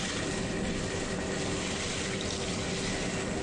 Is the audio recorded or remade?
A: recorded